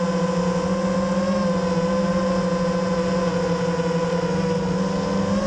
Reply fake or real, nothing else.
real